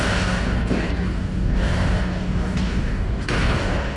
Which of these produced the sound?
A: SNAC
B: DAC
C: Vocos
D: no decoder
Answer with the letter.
B